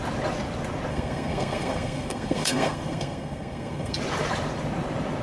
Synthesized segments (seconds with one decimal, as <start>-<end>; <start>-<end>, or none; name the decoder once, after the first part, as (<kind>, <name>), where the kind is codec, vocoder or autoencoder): 0.9-4.0 (codec, SNAC)